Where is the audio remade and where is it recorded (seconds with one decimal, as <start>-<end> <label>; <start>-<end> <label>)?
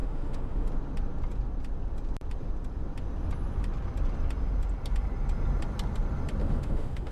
0.0-0.7 remade; 0.7-6.4 recorded; 6.4-7.1 remade